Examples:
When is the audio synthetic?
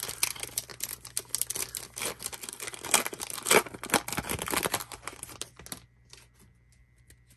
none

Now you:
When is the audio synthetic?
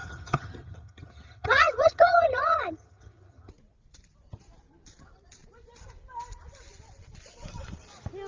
0.0-3.5 (vocoder, HiFi-GAN)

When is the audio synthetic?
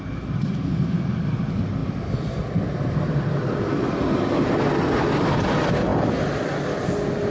none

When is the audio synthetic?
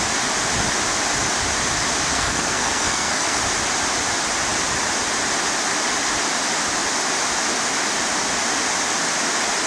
2.1-3.4 (codec, SNAC)